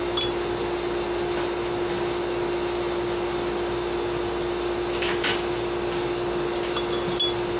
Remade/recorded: recorded